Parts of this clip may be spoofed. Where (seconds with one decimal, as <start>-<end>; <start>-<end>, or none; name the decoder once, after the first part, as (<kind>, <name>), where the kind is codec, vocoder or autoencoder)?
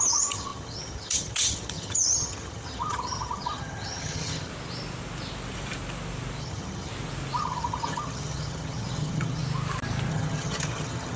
0.0-4.5 (vocoder, HiFi-GAN); 6.4-6.9; 7.4-9.4; 10.1-11.2